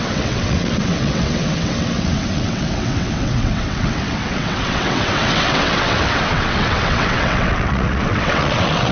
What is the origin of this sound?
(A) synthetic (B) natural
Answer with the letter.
A